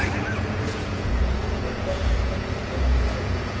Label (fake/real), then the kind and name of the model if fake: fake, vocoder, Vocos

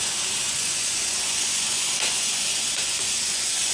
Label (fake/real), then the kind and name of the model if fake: fake, vocoder, Vocos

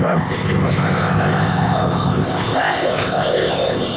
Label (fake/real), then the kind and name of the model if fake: fake, codec, ZipCodec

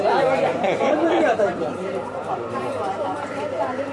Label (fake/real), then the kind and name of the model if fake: fake, vocoder, BigVGAN v2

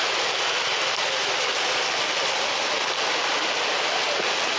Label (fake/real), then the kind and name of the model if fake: real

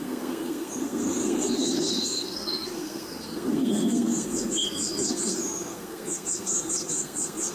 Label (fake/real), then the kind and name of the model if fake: fake, codec, SNAC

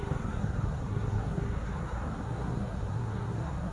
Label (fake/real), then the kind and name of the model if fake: fake, codec, SNAC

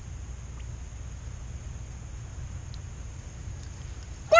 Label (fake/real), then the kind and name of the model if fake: real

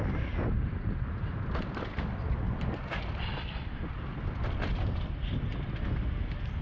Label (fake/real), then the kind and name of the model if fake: real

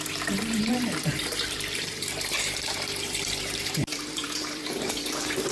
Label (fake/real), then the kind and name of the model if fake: fake, vocoder, BigVGAN v2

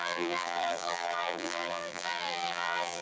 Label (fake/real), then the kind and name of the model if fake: fake, vocoder, BigVGAN v2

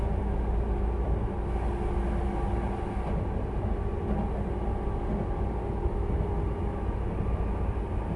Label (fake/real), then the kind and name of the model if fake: real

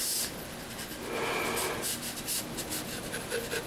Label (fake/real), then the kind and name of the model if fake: real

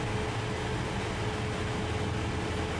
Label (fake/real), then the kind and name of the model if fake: real